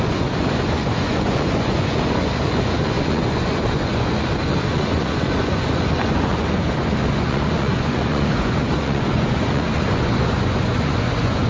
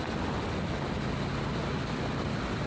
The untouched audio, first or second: second